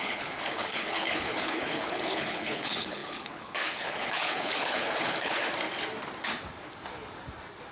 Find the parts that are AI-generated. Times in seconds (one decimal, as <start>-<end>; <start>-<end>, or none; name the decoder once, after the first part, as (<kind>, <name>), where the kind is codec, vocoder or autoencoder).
0.0-5.4 (codec, HILCodec)